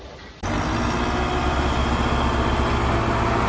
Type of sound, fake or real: real